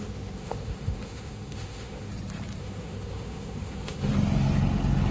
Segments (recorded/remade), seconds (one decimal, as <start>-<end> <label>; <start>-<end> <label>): 0.0-2.1 remade; 2.1-2.6 recorded; 2.6-4.1 remade; 4.1-5.1 recorded